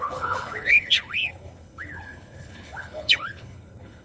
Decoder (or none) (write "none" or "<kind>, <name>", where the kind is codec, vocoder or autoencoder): codec, HILCodec